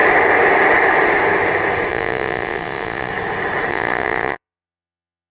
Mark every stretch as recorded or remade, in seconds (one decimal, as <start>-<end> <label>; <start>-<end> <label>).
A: 0.0-1.9 recorded; 1.9-3.1 remade; 3.1-3.7 recorded; 3.7-5.3 remade